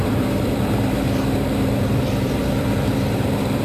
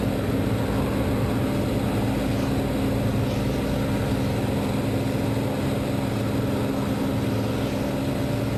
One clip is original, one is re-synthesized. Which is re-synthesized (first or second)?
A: first